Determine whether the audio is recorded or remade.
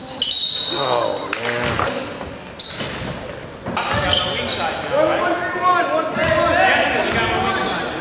recorded